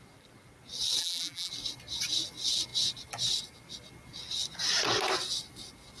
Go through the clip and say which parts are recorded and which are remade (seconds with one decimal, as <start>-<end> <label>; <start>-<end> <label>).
0.0-1.0 recorded; 1.0-1.5 remade; 1.5-6.0 recorded